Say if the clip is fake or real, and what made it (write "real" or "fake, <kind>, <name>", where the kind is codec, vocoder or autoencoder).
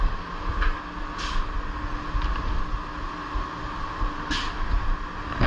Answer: real